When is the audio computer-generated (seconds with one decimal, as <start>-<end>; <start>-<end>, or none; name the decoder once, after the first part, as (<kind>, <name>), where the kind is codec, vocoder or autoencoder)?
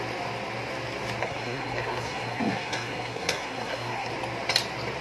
1.2-4.1 (codec, SNAC)